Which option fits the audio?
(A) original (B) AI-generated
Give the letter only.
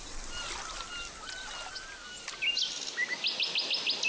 A